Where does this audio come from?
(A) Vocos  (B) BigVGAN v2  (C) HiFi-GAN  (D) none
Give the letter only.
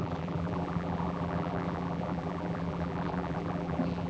B